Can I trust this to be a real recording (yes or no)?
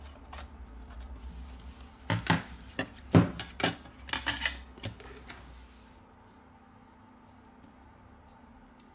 yes